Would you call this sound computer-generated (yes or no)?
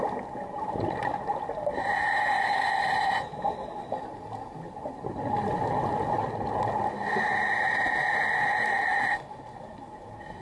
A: no